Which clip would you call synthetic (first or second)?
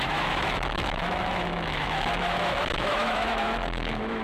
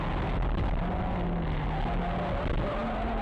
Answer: first